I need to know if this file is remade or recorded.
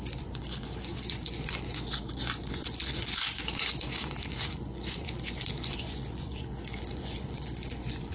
remade